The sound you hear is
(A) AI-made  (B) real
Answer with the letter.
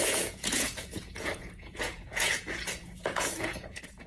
A